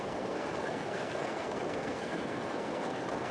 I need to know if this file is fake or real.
fake